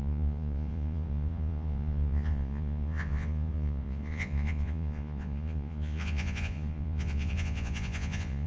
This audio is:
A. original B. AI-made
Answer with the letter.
B